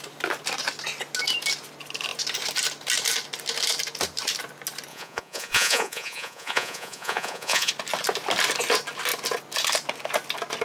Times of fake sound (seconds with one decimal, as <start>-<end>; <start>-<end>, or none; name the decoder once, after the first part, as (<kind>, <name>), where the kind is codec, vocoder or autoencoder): 4.9-7.7 (vocoder, Vocos)

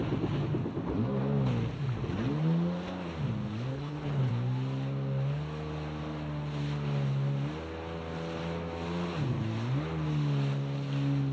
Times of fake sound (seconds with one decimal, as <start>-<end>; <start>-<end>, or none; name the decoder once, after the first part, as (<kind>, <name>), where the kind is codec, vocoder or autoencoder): 3.7-4.3 (codec, HILCodec)

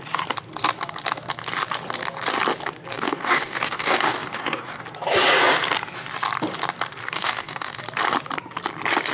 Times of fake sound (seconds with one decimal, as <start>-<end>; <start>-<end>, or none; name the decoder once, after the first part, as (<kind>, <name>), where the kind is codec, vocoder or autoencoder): 2.9-4.8 (codec, DAC); 7.0-7.8

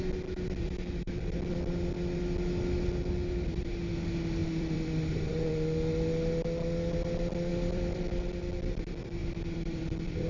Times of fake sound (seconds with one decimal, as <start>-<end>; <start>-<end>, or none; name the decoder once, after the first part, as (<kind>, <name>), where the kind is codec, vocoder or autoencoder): 4.4-5.3 (vocoder, BigVGAN v2); 7.5-8.0; 9.2-10.3

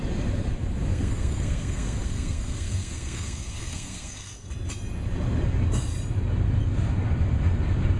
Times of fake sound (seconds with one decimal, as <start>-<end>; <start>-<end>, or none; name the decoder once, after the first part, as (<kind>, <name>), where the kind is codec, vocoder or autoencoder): 0.9-4.5 (codec, SNAC)

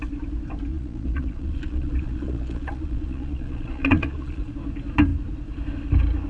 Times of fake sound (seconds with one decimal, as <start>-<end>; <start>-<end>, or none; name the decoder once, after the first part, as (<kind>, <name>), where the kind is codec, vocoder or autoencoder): 0.7-4.5 (vocoder, Vocos)

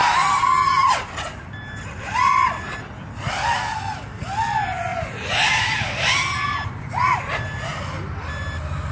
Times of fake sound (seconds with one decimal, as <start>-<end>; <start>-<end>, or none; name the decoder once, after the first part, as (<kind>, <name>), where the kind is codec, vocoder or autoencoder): none

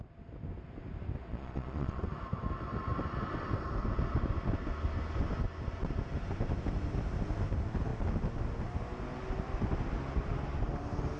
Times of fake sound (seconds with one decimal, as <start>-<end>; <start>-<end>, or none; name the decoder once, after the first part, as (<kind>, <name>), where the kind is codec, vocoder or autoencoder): 1.3-2.0 (vocoder, Vocos)